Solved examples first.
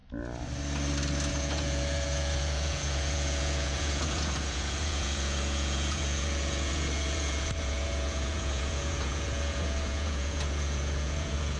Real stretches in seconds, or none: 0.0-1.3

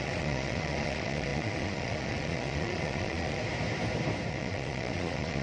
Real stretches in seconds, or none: 3.4-4.3

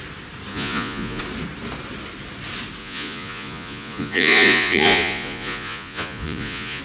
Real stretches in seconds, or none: 0.0-0.5; 1.2-2.8